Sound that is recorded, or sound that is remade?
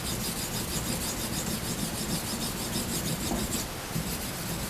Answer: recorded